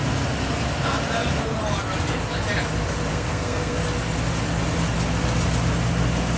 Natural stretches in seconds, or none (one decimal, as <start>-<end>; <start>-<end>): 0.0-3.1; 3.8-6.4